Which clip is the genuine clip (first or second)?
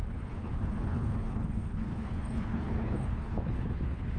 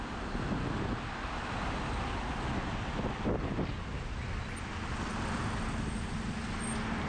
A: second